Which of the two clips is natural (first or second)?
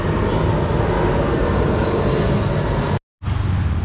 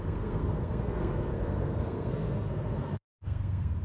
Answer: first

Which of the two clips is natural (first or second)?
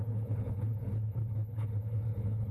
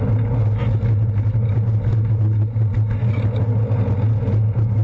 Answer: second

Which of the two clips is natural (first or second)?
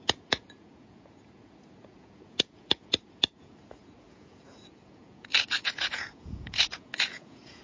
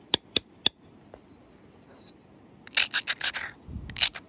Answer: second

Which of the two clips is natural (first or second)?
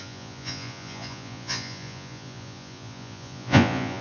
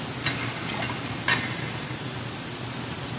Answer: second